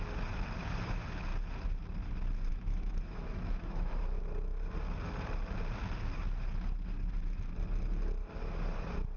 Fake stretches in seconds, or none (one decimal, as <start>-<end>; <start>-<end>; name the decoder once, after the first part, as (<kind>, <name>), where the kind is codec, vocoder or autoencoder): 2.5-4.0 (autoencoder, DAC-VAE)